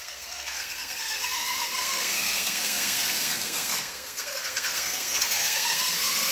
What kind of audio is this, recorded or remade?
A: remade